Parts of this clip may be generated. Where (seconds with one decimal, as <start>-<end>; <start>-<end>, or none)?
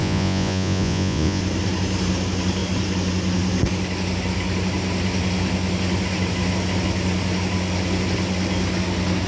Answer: 0.0-1.4